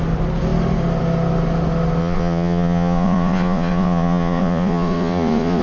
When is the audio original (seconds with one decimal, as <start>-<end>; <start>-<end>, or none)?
0.0-2.0